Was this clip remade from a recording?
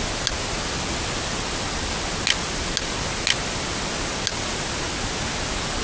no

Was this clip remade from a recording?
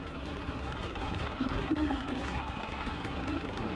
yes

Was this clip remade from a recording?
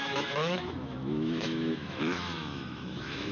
yes